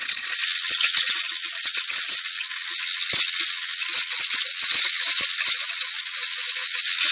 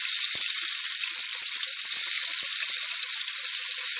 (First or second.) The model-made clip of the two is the first